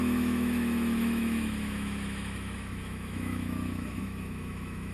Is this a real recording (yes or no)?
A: no